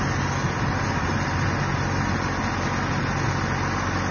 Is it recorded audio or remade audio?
recorded